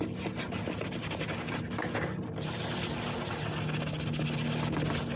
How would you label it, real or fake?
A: real